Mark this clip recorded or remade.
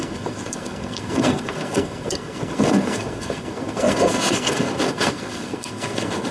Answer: remade